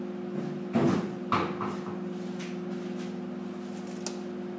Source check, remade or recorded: recorded